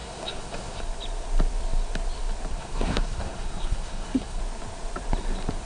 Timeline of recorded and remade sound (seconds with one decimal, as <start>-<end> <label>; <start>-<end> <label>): 0.0-0.8 remade; 0.8-2.5 recorded; 2.5-4.4 remade; 4.4-5.6 recorded